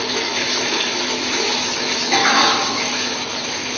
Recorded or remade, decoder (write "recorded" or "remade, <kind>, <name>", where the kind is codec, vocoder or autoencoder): remade, autoencoder, DAC-VAE